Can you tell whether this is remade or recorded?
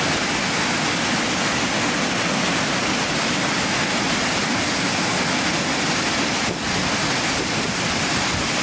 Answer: recorded